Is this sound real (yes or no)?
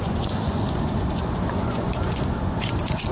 no